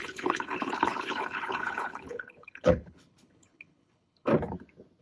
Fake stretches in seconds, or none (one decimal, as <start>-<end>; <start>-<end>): 0.0-4.3